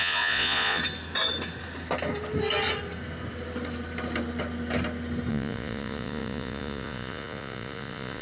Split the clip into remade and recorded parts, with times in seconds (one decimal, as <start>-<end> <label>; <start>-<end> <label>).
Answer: 0.0-0.8 remade; 0.8-5.3 recorded; 5.3-8.2 remade